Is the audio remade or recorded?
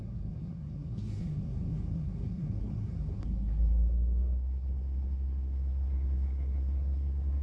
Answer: remade